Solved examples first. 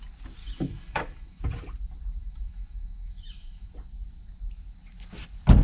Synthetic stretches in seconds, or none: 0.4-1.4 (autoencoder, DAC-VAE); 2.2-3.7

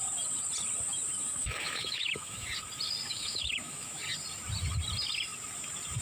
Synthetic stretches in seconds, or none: 1.4-2.5 (autoencoder, DAC-VAE); 3.1-4.0

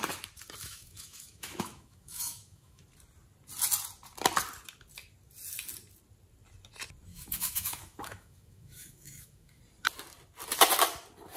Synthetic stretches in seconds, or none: 0.6-2.8 (autoencoder, DAC-VAE); 7.1-9.6

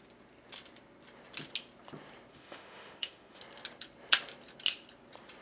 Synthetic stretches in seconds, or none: 2.3-3.4 (autoencoder, DAC-VAE)

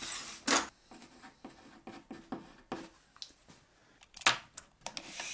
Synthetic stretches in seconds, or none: none

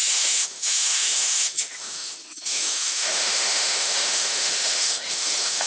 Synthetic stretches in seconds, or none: 0.0-5.7 (autoencoder, DAC-VAE)

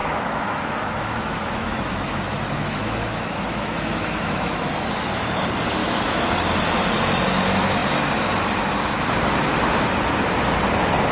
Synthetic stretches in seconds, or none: 0.0-4.6 (autoencoder, DAC-VAE); 5.8-6.3